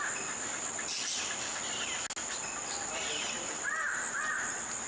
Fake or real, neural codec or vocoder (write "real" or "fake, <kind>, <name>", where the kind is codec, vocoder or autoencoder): real